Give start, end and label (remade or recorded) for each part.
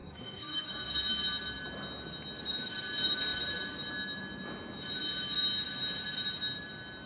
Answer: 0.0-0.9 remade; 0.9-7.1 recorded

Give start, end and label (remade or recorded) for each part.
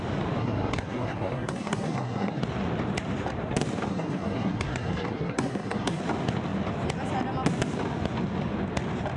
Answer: 0.0-0.4 recorded; 0.4-2.4 remade; 2.4-3.9 recorded; 3.9-6.0 remade; 6.0-9.2 recorded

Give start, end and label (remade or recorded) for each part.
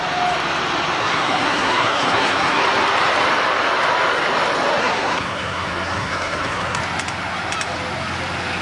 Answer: 0.0-1.0 recorded; 1.0-2.6 remade; 2.6-4.8 recorded; 4.8-6.8 remade; 6.8-8.6 recorded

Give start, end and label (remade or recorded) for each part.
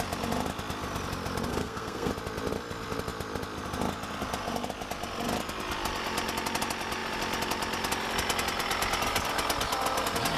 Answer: 0.0-1.5 recorded; 1.5-2.1 remade; 2.1-10.4 recorded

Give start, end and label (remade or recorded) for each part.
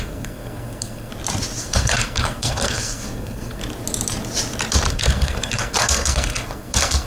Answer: 0.0-1.1 remade; 1.1-1.6 recorded; 1.6-3.6 remade; 3.6-4.9 recorded; 4.9-7.1 remade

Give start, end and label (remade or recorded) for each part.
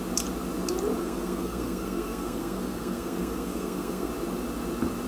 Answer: 0.0-1.0 recorded; 1.0-4.1 remade; 4.1-5.1 recorded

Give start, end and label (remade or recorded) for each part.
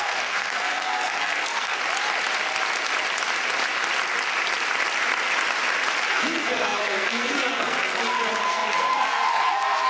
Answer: 0.0-1.8 remade; 1.8-6.1 recorded; 6.1-9.9 remade